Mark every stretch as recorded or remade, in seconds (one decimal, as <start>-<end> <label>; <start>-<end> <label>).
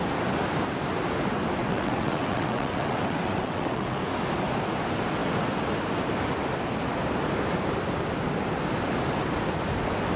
0.0-1.6 recorded; 1.6-4.0 remade; 4.0-10.2 recorded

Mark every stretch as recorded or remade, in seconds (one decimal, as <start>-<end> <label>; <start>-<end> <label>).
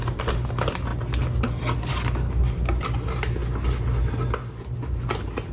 0.0-5.5 recorded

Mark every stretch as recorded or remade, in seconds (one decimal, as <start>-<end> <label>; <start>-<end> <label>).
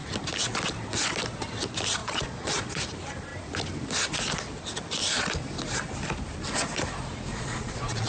0.0-2.0 recorded; 2.0-2.8 remade; 2.8-7.3 recorded; 7.3-8.1 remade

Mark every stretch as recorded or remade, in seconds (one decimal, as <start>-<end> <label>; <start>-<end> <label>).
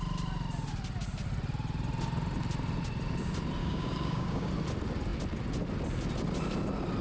0.0-3.6 recorded; 3.6-4.5 remade; 4.5-7.0 recorded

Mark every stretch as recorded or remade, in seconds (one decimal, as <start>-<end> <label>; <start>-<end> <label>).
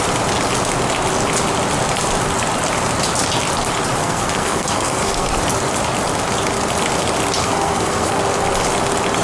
0.0-4.0 recorded; 4.0-5.4 remade; 5.4-7.4 recorded; 7.4-8.2 remade; 8.2-9.2 recorded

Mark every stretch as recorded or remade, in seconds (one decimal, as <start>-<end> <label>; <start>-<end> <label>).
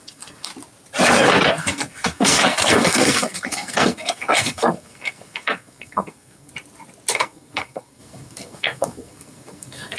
0.0-0.5 remade; 0.5-1.5 recorded; 1.5-6.5 remade; 6.5-7.1 recorded; 7.1-10.0 remade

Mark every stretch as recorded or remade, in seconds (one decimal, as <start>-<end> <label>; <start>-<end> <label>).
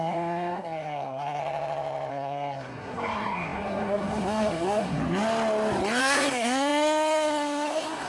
0.0-1.4 remade; 1.4-2.1 recorded; 2.1-5.0 remade; 5.0-6.0 recorded; 6.0-8.1 remade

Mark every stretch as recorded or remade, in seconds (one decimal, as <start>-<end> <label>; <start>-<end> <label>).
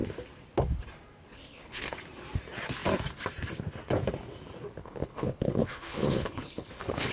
0.0-1.3 recorded; 1.3-1.9 remade; 1.9-4.8 recorded; 4.8-7.1 remade